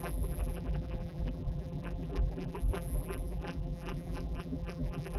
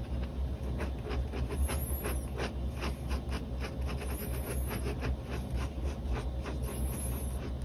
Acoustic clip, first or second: second